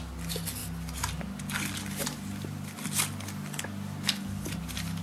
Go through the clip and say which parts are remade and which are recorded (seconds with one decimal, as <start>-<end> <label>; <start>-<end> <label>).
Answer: 0.0-5.0 recorded